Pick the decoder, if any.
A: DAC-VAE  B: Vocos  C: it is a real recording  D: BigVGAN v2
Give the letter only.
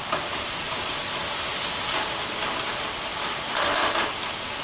C